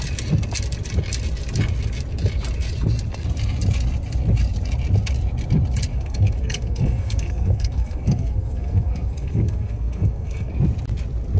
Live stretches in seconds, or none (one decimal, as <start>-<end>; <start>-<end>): 0.0-5.9; 10.5-11.4